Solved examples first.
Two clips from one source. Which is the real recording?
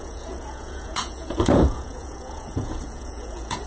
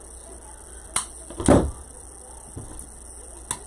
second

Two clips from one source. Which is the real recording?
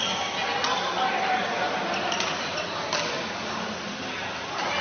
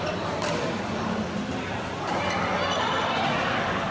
first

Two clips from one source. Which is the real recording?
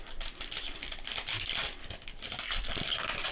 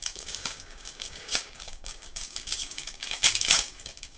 first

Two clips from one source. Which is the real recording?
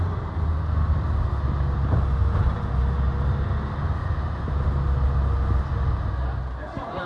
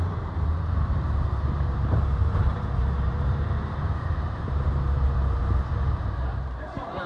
first